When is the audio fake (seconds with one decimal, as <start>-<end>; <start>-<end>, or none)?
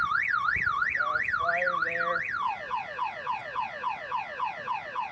none